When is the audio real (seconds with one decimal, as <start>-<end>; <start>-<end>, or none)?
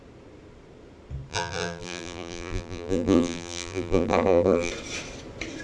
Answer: 0.0-1.3; 4.7-5.6